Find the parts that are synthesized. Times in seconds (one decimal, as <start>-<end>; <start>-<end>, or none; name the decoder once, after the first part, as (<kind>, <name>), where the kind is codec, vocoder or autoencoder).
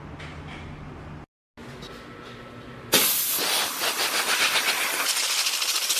none